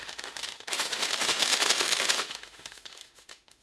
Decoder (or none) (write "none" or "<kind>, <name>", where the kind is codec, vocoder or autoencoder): autoencoder, DAC-VAE